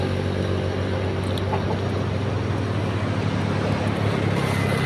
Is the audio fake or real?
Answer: real